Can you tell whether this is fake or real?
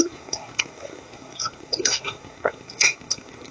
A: fake